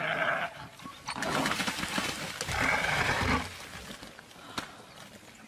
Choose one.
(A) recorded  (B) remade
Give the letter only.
A